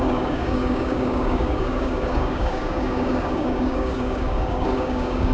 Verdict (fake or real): fake